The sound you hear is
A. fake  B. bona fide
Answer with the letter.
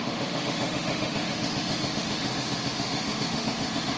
A